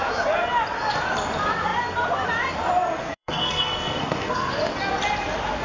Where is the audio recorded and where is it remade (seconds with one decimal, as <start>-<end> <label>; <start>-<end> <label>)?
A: 0.0-3.0 recorded; 3.0-4.5 remade; 4.5-5.6 recorded